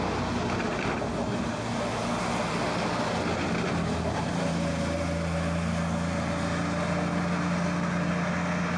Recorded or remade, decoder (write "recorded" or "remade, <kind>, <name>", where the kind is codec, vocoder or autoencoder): recorded